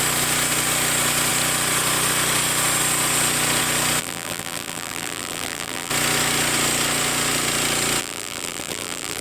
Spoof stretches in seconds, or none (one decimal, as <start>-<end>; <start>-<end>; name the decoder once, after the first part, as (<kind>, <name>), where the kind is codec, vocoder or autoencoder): 4.0-5.9 (vocoder, BigVGAN v2); 8.0-9.2